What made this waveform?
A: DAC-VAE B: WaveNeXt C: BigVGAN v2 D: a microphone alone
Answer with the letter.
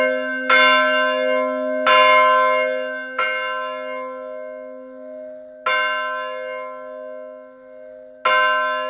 D